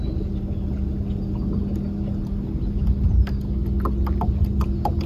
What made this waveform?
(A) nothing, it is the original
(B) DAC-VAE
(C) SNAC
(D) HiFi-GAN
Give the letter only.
A